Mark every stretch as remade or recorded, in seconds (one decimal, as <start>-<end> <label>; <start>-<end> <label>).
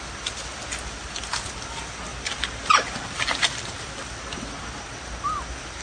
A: 0.0-5.8 recorded